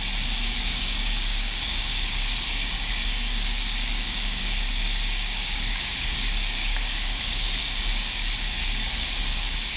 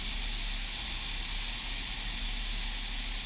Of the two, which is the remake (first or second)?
first